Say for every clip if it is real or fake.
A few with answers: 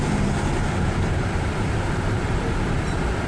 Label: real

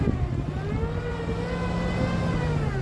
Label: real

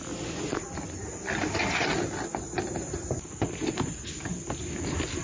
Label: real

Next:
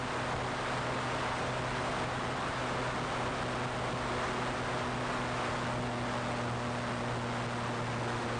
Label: real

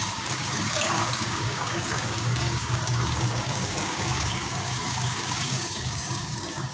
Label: fake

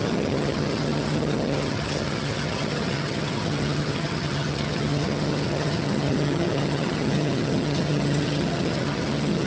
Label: fake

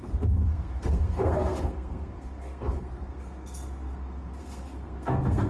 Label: fake